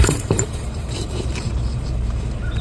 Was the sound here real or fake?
fake